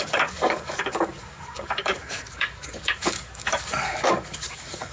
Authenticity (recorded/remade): remade